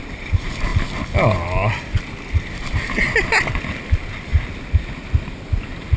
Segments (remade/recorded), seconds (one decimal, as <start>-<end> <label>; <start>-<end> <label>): 0.0-6.0 recorded